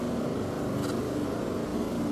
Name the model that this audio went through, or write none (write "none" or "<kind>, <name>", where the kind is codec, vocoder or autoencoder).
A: none